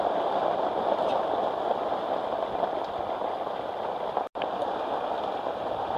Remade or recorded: remade